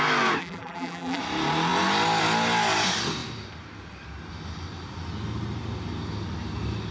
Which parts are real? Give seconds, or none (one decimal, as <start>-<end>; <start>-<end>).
0.0-0.4; 1.2-6.9